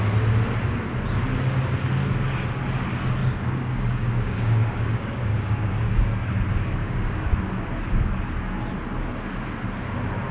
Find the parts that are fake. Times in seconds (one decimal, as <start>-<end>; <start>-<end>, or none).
3.2-6.3; 6.8-7.3